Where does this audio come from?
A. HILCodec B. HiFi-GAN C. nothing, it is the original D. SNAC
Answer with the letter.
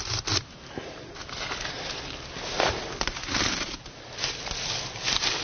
C